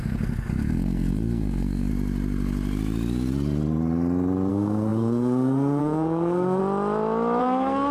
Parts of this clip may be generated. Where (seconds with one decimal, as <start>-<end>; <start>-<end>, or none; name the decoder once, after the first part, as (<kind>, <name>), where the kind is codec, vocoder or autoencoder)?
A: 0.0-1.9 (codec, SNAC); 4.5-6.6; 7.4-7.9

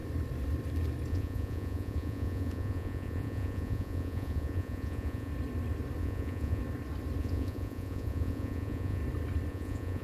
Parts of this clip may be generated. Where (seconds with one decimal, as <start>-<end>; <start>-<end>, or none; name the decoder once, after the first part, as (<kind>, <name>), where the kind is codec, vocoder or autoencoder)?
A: 1.1-5.3 (vocoder, Vocos); 6.0-6.6; 7.2-9.0; 9.5-10.0

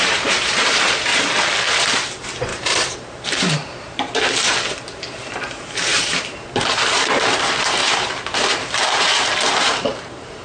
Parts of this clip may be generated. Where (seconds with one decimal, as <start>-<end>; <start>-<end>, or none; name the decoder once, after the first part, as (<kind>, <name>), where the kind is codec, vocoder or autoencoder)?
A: 0.0-1.1 (vocoder, BigVGAN v2); 1.7-10.4

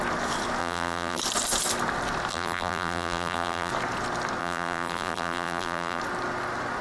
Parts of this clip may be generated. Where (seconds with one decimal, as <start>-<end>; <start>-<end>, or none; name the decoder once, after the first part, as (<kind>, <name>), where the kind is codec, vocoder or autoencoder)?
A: 0.6-1.2 (vocoder, BigVGAN v2); 2.3-3.7; 4.4-6.0

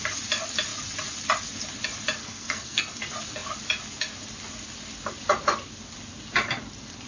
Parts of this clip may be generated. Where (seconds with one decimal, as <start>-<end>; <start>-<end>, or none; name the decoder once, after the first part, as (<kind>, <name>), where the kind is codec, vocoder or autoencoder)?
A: 2.2-3.0 (codec, SNAC)

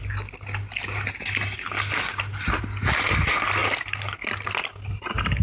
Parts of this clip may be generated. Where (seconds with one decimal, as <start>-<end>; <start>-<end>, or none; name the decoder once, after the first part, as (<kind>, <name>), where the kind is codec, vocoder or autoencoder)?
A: none

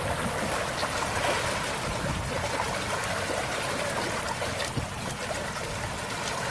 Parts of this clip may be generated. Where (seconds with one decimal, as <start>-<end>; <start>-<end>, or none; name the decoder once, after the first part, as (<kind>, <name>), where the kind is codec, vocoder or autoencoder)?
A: none